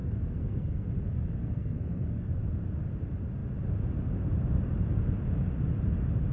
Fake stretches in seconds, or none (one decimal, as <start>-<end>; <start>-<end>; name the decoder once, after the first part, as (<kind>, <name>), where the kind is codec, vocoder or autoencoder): 0.0-0.9 (codec, SNAC); 1.4-2.4